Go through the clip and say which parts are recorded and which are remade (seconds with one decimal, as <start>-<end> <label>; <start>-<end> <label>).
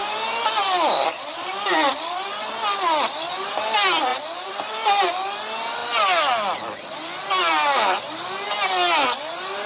0.0-2.5 remade; 2.5-4.1 recorded; 4.1-5.1 remade; 5.1-9.7 recorded